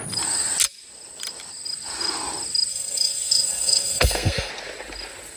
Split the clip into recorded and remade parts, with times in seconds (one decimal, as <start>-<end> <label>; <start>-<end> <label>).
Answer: 0.0-2.7 recorded; 2.7-4.5 remade; 4.5-5.4 recorded